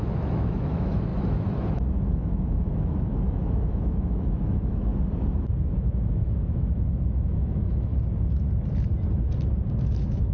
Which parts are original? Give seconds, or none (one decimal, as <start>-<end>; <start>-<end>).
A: 4.9-5.7; 7.9-9.7